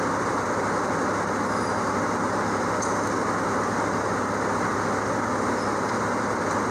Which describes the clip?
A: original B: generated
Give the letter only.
A